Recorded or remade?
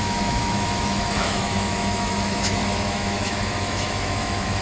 remade